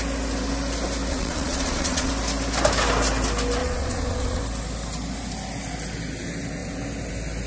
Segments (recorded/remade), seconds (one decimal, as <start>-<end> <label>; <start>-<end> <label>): 0.0-1.1 recorded; 1.1-2.1 remade; 2.1-3.6 recorded; 3.6-4.4 remade; 4.4-7.5 recorded

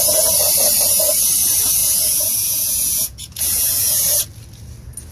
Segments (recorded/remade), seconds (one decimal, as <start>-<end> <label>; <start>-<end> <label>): 0.0-1.8 recorded; 1.8-4.2 remade; 4.2-5.1 recorded

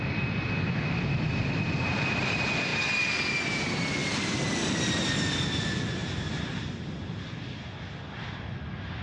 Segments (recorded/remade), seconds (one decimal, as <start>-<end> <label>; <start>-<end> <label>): 0.0-9.0 recorded

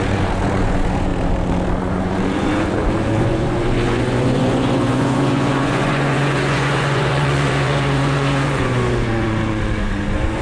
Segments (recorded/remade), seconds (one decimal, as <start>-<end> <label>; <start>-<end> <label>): 0.0-1.1 remade; 1.1-1.8 recorded; 1.8-10.4 remade

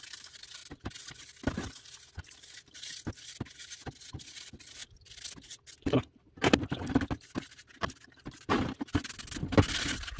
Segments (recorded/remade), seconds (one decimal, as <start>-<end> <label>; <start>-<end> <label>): 0.0-10.2 recorded

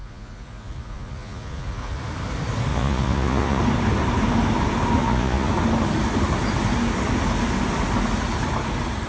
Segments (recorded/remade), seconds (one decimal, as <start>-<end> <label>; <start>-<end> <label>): 0.0-2.0 remade; 2.0-2.7 recorded; 2.7-3.6 remade; 3.6-5.0 recorded; 5.0-5.5 remade; 5.5-9.1 recorded

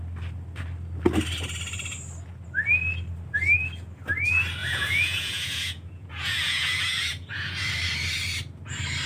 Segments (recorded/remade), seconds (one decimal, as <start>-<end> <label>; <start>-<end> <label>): 0.0-4.6 recorded; 4.6-7.6 remade; 7.6-9.1 recorded

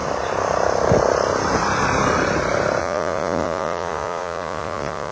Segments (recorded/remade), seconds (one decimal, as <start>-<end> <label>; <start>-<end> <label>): 0.0-2.8 recorded; 2.8-5.1 remade